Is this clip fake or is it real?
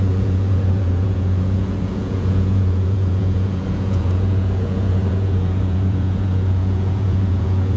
fake